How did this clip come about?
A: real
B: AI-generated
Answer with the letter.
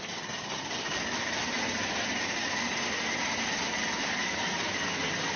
A